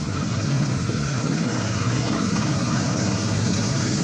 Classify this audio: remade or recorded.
remade